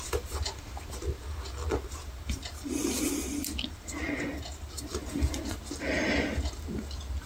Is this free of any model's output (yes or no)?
yes